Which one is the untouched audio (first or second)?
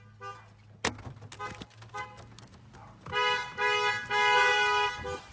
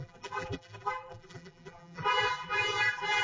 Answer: first